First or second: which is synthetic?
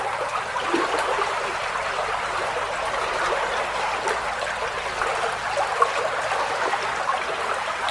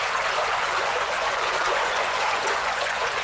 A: second